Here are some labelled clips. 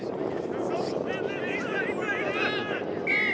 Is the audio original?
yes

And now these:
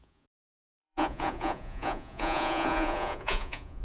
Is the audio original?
no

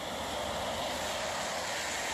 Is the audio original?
yes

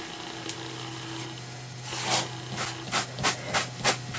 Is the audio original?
yes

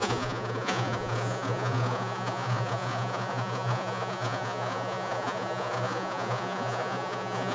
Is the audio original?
no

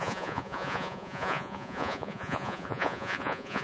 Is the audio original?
no